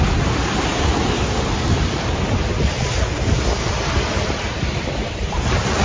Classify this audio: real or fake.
real